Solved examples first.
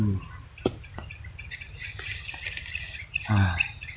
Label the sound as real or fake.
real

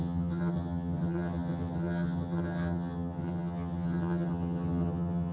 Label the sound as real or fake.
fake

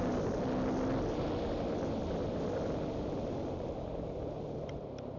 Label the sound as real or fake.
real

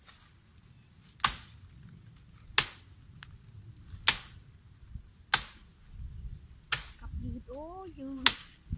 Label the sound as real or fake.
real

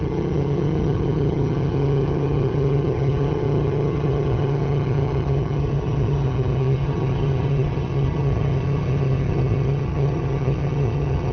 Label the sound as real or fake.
fake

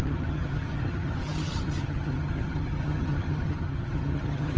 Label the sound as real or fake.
fake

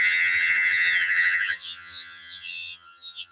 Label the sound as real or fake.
fake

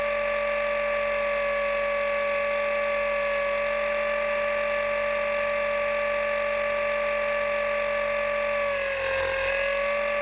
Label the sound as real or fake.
real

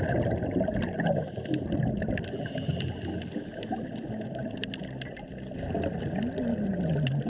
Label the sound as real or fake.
real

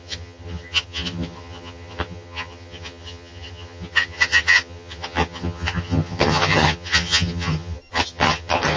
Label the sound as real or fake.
fake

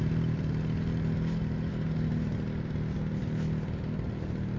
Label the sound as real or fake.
real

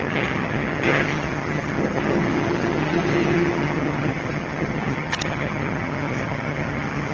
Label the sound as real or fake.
fake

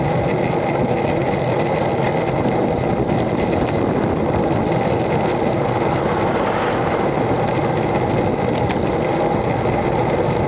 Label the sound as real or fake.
real